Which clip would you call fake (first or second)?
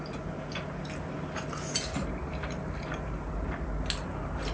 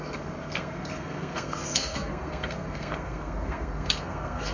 second